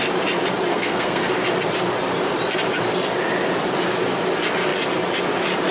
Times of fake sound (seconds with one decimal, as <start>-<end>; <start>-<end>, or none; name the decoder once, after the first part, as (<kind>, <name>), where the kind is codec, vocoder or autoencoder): 0.7-1.3 (codec, SNAC)